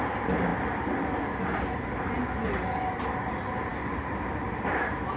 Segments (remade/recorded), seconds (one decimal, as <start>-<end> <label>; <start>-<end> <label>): 0.0-5.2 recorded